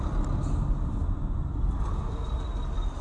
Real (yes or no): yes